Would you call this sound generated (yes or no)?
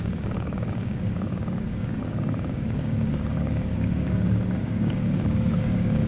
yes